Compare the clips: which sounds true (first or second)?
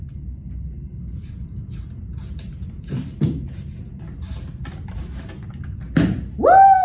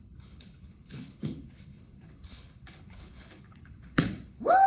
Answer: first